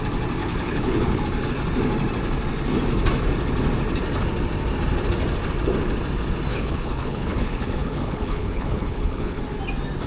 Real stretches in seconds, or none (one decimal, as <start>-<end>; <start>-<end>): 0.0-0.4; 1.2-6.5; 9.4-10.1